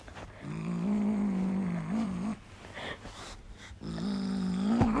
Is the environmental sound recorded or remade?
recorded